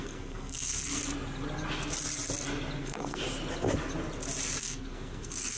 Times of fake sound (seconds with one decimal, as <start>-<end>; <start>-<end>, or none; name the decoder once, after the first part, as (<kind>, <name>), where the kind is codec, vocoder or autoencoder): 0.0-1.0 (codec, SNAC); 2.8-3.2; 4.6-5.6

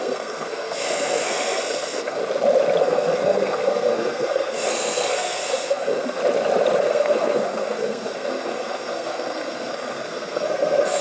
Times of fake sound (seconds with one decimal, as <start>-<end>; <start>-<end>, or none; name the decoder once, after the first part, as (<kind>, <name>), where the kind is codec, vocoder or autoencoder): 0.0-2.2 (codec, SNAC); 2.8-6.2; 6.8-11.0

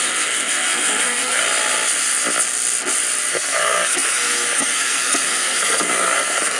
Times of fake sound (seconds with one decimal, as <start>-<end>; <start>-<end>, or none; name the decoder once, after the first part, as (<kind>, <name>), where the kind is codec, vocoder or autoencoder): 0.0-1.4 (codec, SNAC); 3.3-6.6

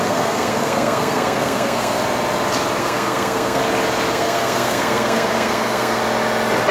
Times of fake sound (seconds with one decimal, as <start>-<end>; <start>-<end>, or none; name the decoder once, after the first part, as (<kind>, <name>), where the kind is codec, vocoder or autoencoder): 0.0-2.0 (codec, SNAC); 2.8-3.6; 4.1-6.0

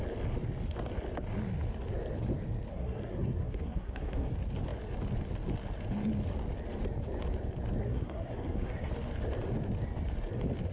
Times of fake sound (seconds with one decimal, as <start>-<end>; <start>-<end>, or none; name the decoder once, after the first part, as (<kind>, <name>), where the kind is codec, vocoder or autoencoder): 2.7-4.3 (codec, SNAC); 7.8-8.9

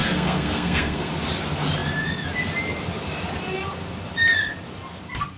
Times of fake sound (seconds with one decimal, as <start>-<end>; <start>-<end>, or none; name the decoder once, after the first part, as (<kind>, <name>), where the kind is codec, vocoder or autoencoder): 0.0-1.1 (codec, SNAC)